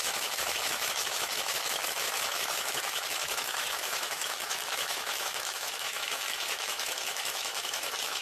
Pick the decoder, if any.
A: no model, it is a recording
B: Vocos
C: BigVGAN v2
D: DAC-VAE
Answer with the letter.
D